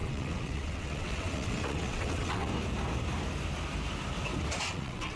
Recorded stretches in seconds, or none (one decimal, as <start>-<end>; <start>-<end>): 2.5-4.6